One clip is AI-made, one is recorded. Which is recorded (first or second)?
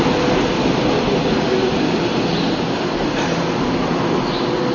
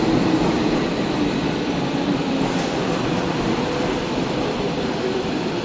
first